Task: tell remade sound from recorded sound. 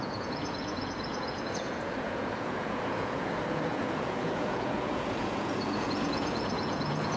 remade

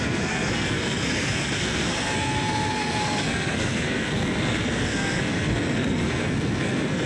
remade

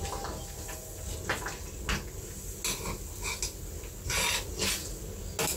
recorded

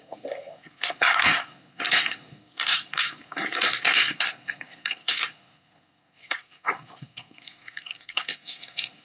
remade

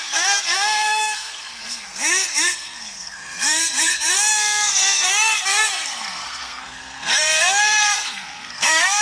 remade